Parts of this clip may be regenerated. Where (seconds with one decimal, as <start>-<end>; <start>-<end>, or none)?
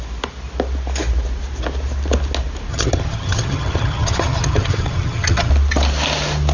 2.7-5.5